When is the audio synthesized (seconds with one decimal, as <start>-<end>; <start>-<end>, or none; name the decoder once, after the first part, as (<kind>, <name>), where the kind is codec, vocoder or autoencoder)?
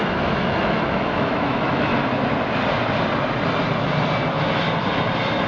0.0-1.9 (autoencoder, DAC-VAE)